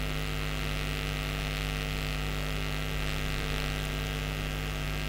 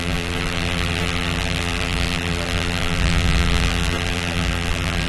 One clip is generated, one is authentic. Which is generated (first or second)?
second